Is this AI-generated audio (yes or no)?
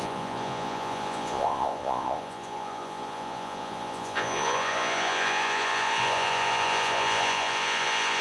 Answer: yes